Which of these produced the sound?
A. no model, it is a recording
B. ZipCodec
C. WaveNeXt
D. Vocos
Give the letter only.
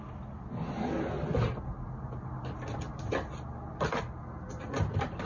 A